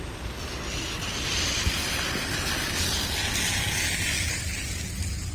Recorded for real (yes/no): yes